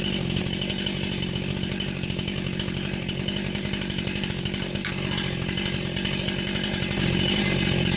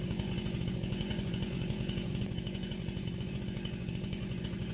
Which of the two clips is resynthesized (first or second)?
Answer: second